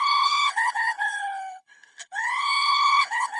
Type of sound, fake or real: fake